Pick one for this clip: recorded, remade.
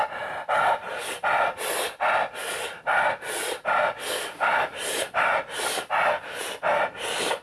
recorded